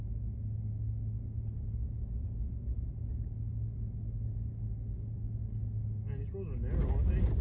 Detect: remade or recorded recorded